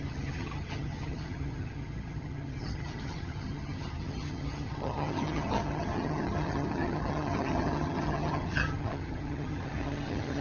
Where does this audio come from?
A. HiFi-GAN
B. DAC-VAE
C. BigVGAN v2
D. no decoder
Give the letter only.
A